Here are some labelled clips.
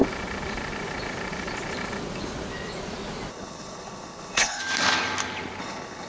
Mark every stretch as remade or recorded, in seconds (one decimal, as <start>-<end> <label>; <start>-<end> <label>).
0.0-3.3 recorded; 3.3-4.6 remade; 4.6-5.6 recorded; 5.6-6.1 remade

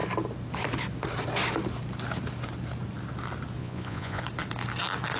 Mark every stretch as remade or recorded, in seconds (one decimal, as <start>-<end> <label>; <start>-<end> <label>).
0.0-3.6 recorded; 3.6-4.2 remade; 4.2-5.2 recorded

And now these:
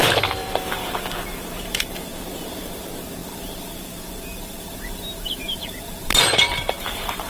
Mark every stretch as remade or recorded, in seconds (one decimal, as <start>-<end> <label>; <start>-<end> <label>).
0.0-7.3 remade

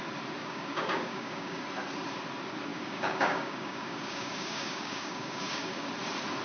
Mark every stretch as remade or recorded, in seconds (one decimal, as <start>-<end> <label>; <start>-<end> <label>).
0.0-0.4 recorded; 0.4-1.6 remade; 1.6-2.7 recorded; 2.7-5.9 remade; 5.9-6.4 recorded

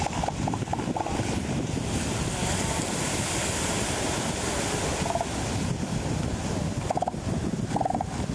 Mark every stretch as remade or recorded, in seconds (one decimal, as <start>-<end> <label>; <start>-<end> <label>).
0.0-8.3 recorded